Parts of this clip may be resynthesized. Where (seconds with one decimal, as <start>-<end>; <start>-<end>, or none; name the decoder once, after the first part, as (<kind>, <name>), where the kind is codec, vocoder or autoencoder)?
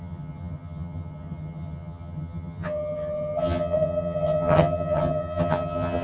0.0-6.0 (vocoder, HiFi-GAN)